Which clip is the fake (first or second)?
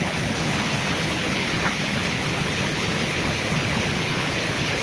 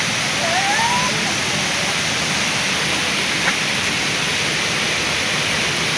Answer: first